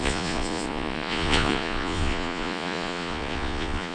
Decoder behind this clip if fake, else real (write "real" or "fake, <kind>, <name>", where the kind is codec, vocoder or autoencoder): fake, vocoder, Vocos